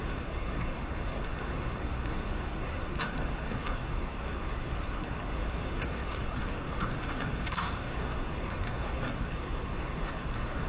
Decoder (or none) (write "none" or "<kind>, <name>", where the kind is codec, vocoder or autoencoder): codec, SNAC